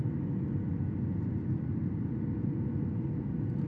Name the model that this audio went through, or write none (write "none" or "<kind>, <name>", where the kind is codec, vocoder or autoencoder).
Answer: none